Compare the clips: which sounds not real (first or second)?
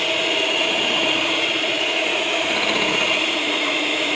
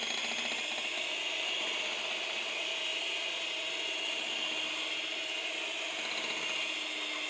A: first